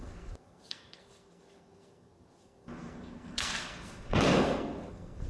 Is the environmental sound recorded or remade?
remade